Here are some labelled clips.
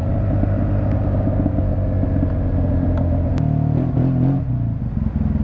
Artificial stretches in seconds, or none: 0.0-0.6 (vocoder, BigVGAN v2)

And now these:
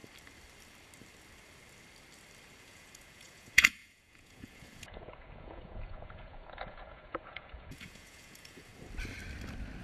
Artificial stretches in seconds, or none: 2.6-8.7 (vocoder, Vocos)